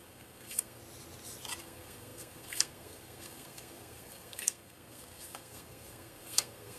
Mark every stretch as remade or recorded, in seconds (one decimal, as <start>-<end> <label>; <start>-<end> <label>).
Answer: 0.0-0.8 remade; 0.8-1.6 recorded; 1.6-6.8 remade